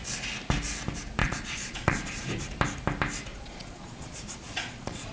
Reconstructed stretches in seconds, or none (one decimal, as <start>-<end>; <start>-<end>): 1.2-2.2; 3.3-5.1